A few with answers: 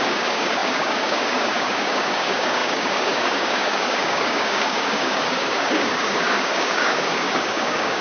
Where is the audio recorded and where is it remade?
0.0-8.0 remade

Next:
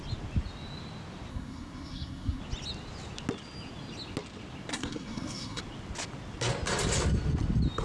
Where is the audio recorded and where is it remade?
0.0-1.3 recorded; 1.3-2.4 remade; 2.4-4.7 recorded; 4.7-5.6 remade; 5.6-7.8 recorded

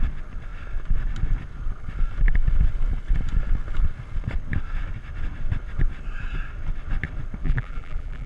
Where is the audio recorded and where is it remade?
0.0-7.4 recorded; 7.4-8.3 remade

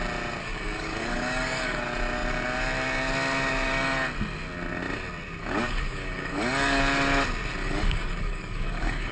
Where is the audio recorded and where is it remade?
0.0-0.4 recorded; 0.4-1.8 remade; 1.8-5.4 recorded; 5.4-6.8 remade; 6.8-7.6 recorded; 7.6-9.1 remade

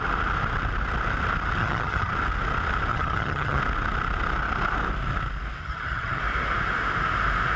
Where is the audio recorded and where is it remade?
0.0-1.6 recorded; 1.6-2.1 remade; 2.1-2.9 recorded; 2.9-3.6 remade; 3.6-5.6 recorded; 5.6-6.2 remade; 6.2-7.6 recorded

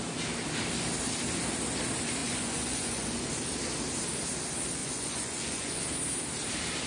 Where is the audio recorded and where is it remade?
0.0-2.2 recorded; 2.2-3.3 remade; 3.3-4.8 recorded; 4.8-5.8 remade; 5.8-6.9 recorded

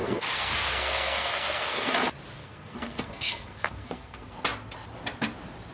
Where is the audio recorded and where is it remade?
0.0-1.9 remade; 1.9-2.4 recorded; 2.4-4.4 remade; 4.4-5.7 recorded

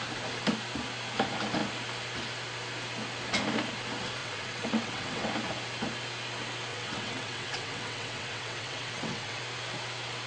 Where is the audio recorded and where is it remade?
0.0-4.2 recorded; 4.2-5.3 remade; 5.3-6.7 recorded; 6.7-9.4 remade; 9.4-10.3 recorded